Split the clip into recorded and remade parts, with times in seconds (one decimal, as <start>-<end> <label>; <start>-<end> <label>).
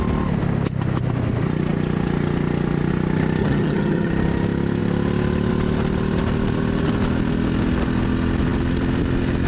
0.0-3.4 recorded; 3.4-4.1 remade; 4.1-9.5 recorded